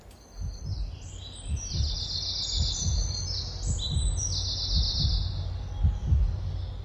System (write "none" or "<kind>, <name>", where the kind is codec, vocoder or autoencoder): none